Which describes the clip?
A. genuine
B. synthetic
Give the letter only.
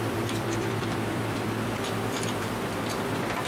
B